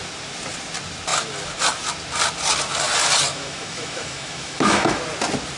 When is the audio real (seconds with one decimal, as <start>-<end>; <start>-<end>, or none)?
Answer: 0.0-3.3; 5.0-5.6